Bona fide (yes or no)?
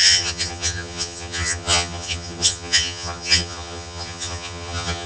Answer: no